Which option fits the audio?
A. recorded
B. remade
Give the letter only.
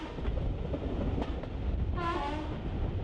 A